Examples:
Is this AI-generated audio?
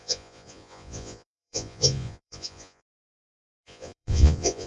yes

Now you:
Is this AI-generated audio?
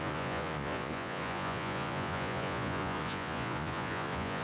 yes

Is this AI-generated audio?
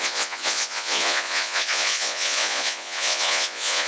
yes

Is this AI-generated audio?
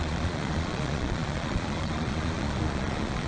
yes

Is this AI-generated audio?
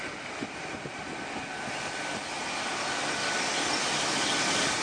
no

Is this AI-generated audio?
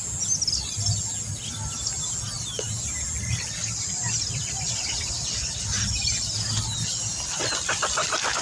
no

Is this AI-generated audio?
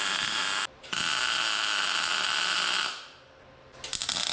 no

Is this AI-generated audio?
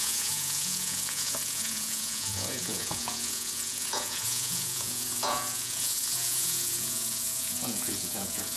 yes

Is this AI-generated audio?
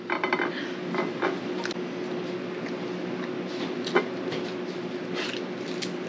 no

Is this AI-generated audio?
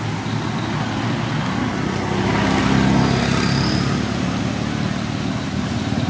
no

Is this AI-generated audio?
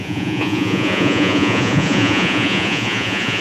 yes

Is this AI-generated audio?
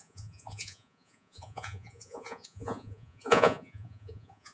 yes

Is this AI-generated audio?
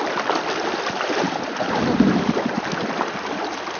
no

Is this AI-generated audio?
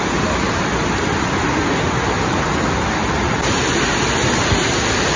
no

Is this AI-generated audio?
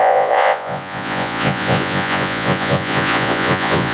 yes